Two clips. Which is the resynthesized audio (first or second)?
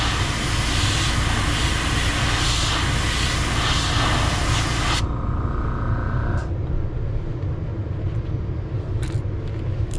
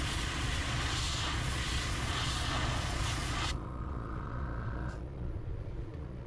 second